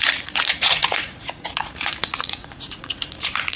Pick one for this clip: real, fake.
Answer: fake